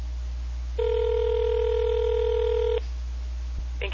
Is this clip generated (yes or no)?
no